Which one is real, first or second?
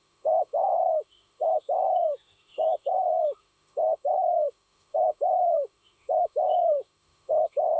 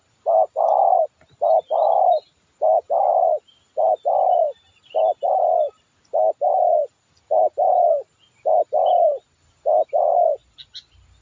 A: second